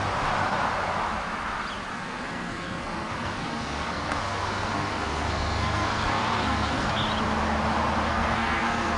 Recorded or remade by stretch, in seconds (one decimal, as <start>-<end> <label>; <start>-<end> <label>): 0.0-1.9 recorded; 1.9-6.9 remade; 6.9-8.1 recorded; 8.1-9.0 remade